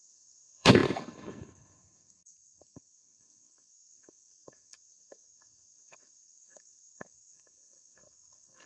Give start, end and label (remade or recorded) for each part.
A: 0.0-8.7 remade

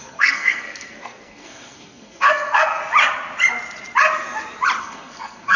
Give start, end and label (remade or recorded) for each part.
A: 0.0-2.8 remade; 2.8-4.8 recorded; 4.8-5.6 remade

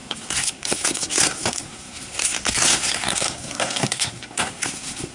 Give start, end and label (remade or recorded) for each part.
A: 0.0-5.1 remade

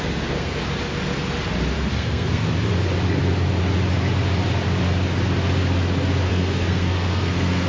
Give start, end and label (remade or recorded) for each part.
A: 0.0-0.6 remade; 0.6-1.9 recorded; 1.9-2.5 remade; 2.5-6.3 recorded; 6.3-7.7 remade